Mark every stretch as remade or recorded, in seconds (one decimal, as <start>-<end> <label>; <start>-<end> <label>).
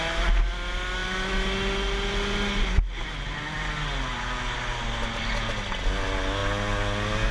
0.0-7.3 recorded